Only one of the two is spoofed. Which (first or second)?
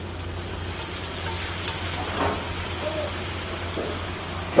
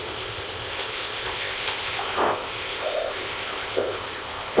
second